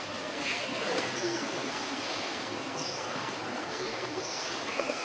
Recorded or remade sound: remade